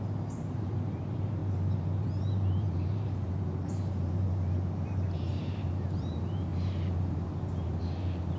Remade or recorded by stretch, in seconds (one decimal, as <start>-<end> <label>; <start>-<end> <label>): 0.0-8.4 remade